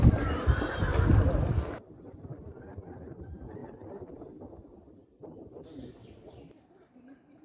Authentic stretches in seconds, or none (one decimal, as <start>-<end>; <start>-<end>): 0.9-2.0; 3.6-4.9